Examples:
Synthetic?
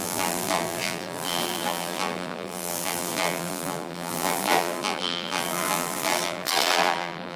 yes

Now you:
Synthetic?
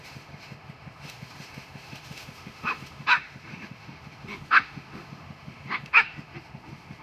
yes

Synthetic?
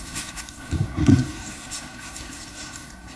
yes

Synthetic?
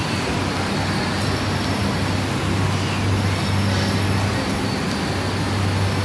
no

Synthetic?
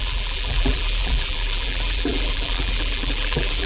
yes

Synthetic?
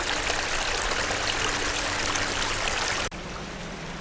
no